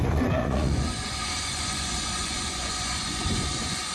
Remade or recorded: remade